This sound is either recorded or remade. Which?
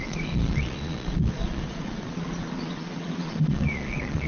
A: remade